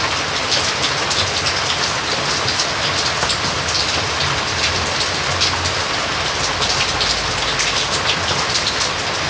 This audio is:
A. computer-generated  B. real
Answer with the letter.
B